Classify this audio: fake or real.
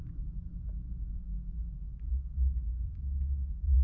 real